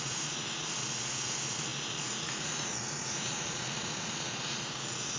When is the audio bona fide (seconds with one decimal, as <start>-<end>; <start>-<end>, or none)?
none